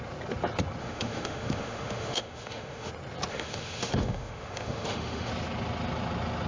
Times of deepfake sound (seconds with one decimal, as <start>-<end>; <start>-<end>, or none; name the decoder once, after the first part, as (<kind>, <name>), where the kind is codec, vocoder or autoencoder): 0.8-2.9 (autoencoder, DAC-VAE); 3.3-5.3